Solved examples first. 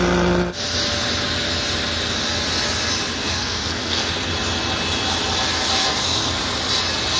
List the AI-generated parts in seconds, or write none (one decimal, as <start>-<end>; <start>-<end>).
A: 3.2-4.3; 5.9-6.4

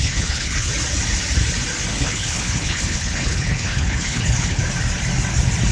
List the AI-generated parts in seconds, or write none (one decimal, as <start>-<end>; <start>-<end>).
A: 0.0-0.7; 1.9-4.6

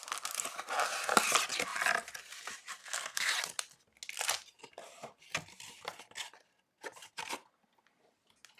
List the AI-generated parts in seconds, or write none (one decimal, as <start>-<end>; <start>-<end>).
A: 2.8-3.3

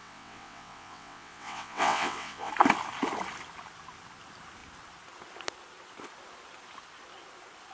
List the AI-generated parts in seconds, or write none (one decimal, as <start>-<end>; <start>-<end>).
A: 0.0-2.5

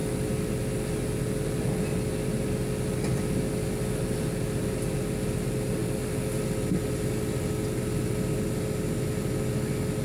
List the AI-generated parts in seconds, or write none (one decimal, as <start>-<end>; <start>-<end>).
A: none

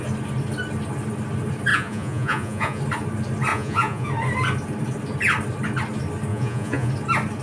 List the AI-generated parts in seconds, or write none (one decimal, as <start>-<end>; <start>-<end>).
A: 1.7-2.8; 3.5-4.1; 6.3-6.9

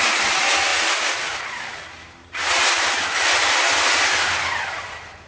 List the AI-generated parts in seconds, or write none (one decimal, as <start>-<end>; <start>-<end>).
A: none

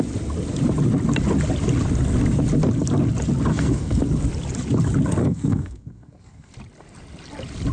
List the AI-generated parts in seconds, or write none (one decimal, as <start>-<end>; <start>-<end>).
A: 3.5-4.0; 5.2-6.5